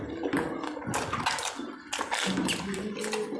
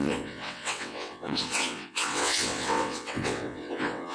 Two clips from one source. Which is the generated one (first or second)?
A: second